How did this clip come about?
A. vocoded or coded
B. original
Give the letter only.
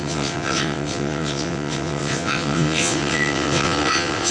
A